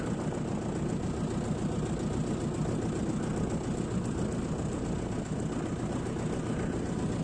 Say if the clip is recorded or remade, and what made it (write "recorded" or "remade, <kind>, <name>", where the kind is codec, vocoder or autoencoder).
recorded